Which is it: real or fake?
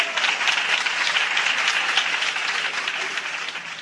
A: real